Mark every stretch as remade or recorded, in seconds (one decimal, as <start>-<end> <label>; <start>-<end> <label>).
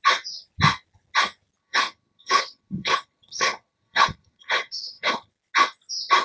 0.0-1.6 recorded; 1.6-5.3 remade; 5.3-6.2 recorded